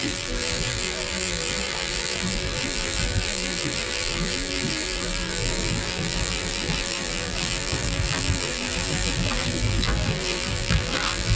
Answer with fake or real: fake